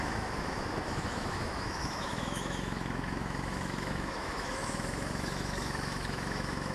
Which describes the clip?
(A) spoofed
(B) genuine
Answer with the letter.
A